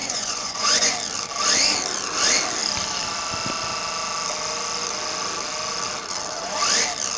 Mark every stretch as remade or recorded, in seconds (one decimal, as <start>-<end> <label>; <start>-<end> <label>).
0.0-0.9 remade; 0.9-7.2 recorded